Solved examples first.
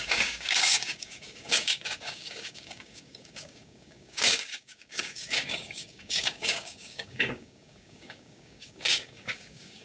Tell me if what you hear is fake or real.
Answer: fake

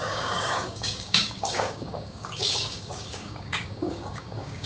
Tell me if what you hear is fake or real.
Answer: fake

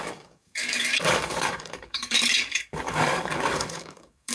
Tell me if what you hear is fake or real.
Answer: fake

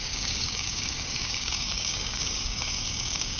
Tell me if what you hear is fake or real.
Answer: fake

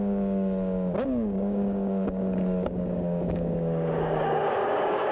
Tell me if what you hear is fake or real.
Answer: fake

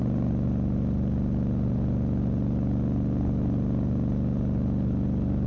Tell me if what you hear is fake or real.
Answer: real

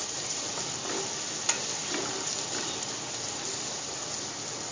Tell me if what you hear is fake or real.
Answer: real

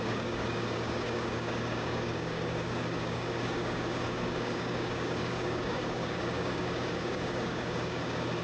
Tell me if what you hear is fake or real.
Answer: fake